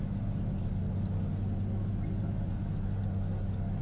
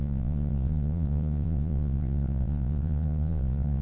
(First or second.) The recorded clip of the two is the first